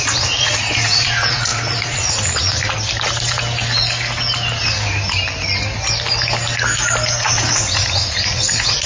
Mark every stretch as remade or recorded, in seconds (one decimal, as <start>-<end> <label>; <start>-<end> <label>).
0.0-2.6 remade; 2.6-7.2 recorded; 7.2-8.9 remade